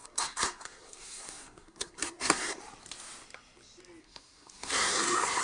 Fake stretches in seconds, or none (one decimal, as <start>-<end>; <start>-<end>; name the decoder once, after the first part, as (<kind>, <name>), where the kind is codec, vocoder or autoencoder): 0.0-2.6 (codec, SNAC); 4.0-5.4